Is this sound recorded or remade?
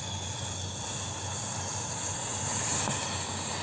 recorded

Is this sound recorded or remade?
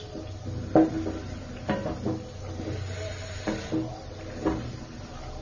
recorded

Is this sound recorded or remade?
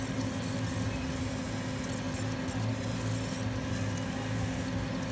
recorded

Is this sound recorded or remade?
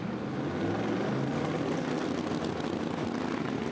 recorded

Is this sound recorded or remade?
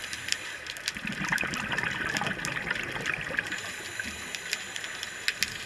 recorded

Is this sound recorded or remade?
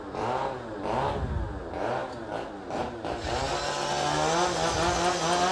recorded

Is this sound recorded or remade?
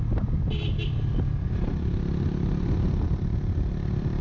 remade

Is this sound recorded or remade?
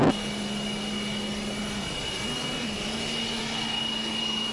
recorded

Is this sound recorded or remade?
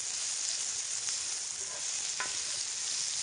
recorded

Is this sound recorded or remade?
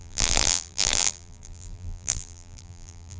remade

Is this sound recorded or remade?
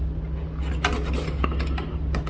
recorded